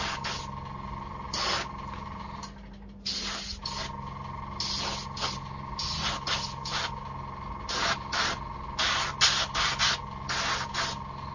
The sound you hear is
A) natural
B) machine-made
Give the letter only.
A